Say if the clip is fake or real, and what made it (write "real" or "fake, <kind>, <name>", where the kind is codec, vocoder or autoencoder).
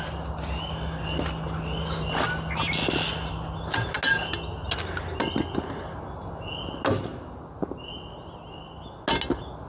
real